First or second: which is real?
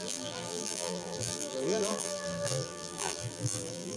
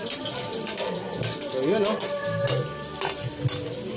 second